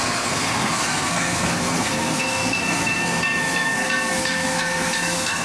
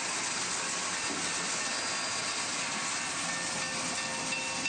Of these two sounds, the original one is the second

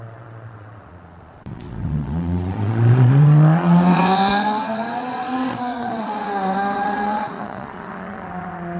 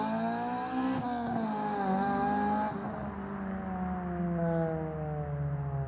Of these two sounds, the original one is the second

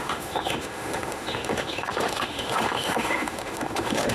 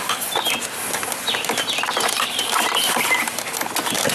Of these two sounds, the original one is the second